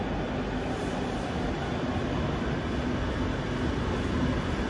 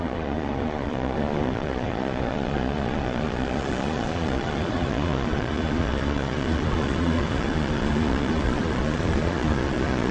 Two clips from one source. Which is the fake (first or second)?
second